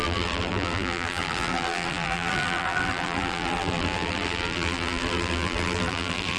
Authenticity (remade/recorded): remade